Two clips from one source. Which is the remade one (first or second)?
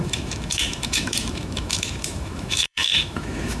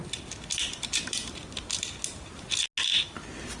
first